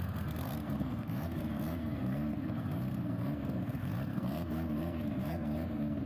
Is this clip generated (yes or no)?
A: yes